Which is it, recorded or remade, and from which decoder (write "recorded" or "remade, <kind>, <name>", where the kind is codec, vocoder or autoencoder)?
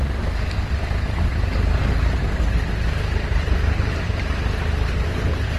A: recorded